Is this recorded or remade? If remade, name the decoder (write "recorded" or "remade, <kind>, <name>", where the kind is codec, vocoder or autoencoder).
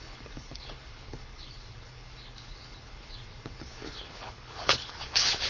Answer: remade, codec, HILCodec